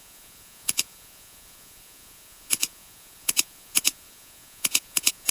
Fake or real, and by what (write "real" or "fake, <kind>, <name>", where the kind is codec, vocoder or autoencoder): fake, vocoder, Vocos